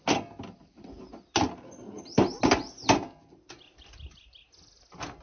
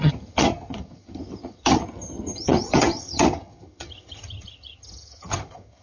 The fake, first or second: second